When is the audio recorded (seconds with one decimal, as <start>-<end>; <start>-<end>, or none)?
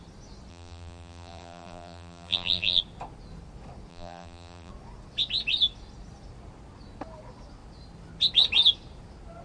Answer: 0.0-0.5; 2.8-3.9; 4.7-9.4